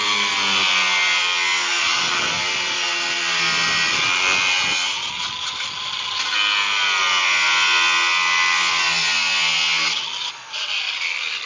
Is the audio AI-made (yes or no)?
no